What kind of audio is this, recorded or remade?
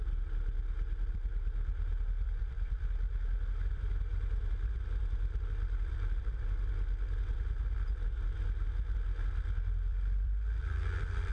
remade